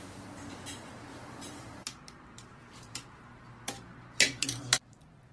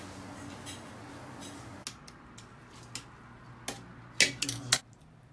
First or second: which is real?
second